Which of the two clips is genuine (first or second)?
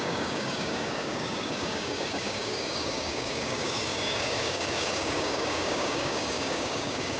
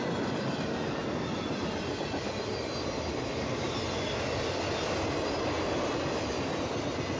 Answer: second